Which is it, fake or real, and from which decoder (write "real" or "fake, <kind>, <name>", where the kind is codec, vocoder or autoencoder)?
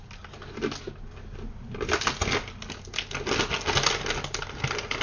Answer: real